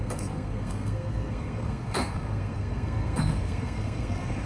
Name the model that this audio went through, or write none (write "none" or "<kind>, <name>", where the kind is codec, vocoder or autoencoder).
codec, SNAC